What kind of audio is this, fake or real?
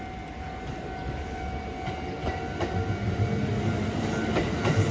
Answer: real